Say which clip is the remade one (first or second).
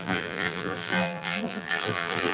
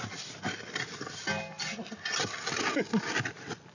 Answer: first